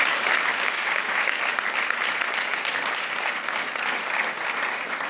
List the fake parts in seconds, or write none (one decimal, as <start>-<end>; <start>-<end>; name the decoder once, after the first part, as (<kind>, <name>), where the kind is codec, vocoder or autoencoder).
0.5-1.4 (codec, DAC)